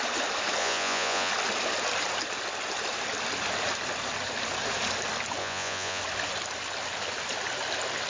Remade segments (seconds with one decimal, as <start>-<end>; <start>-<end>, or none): 0.6-1.3; 5.4-6.0